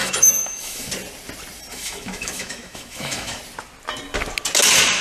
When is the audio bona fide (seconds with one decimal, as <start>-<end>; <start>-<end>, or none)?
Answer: 0.9-1.7; 3.4-5.0

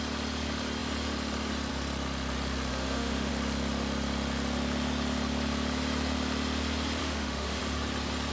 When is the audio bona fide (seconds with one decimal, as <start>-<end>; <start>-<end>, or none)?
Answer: 0.0-2.7; 3.3-7.0; 7.6-8.3